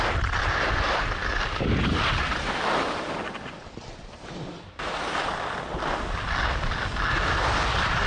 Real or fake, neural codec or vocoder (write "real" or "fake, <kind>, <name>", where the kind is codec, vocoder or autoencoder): real